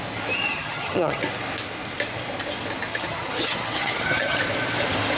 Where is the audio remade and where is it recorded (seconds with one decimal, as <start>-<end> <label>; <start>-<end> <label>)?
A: 0.0-0.5 recorded; 0.5-1.2 remade; 1.2-2.9 recorded; 2.9-4.4 remade; 4.4-5.2 recorded